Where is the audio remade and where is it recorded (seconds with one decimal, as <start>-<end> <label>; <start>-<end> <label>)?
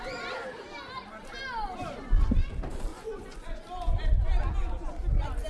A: 0.0-2.9 recorded; 2.9-3.6 remade; 3.6-5.5 recorded